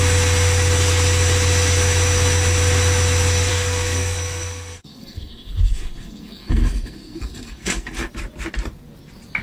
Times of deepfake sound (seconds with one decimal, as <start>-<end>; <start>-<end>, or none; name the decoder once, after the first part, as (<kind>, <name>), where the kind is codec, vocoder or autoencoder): 3.5-8.1 (codec, SNAC)

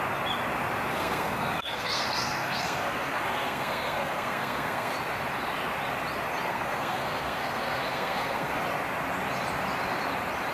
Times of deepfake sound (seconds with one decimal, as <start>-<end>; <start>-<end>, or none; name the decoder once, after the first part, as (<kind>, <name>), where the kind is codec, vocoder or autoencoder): 0.9-4.9 (codec, SNAC); 6.5-8.6

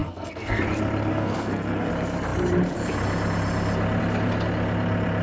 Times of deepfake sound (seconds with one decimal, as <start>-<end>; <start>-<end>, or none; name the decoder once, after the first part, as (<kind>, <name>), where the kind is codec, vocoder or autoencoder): 0.0-0.6 (codec, SNAC); 1.1-1.9